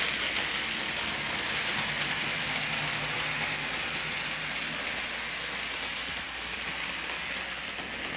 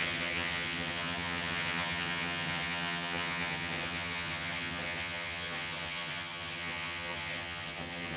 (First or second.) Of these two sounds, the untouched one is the first